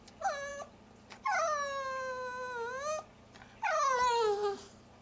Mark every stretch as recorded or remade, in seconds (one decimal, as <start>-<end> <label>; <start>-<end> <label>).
0.0-5.0 recorded